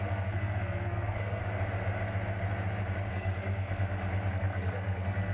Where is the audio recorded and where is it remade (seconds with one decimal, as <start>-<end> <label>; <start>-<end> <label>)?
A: 0.0-1.4 remade; 1.4-3.1 recorded; 3.1-3.8 remade; 3.8-4.3 recorded; 4.3-5.3 remade